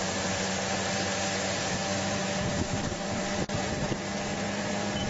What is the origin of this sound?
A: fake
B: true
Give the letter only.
A